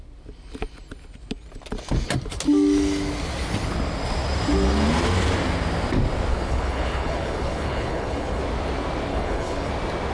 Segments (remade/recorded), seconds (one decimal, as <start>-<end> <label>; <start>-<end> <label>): 0.0-6.3 recorded; 6.3-8.4 remade; 8.4-9.1 recorded; 9.1-9.7 remade; 9.7-10.1 recorded